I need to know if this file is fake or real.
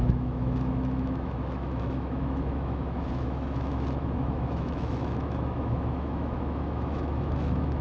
fake